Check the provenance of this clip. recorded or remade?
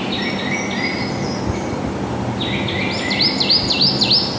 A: recorded